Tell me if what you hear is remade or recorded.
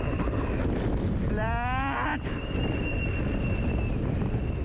recorded